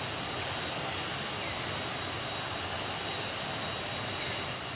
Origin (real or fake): real